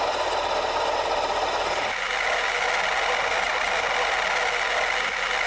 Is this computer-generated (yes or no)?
no